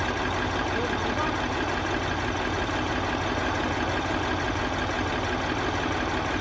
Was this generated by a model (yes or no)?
no